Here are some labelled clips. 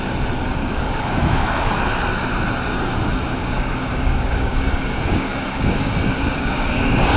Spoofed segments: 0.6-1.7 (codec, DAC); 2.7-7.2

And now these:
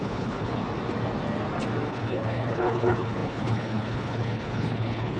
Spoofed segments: 0.0-0.6 (codec, HILCodec); 1.9-5.2

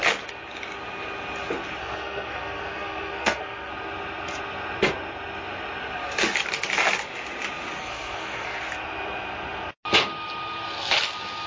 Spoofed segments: 1.8-3.7 (codec, SNAC); 7.8-8.6

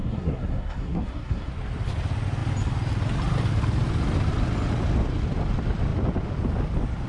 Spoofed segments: 0.0-1.5 (codec, SNAC)

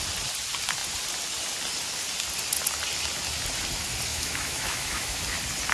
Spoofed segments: 4.1-5.2 (autoencoder, DAC-VAE)